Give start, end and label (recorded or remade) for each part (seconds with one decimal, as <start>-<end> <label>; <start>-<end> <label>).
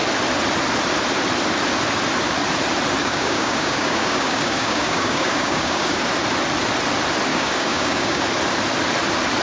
0.0-3.0 recorded; 3.0-6.0 remade; 6.0-7.3 recorded; 7.3-8.2 remade; 8.2-9.4 recorded